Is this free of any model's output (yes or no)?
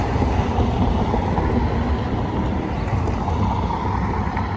yes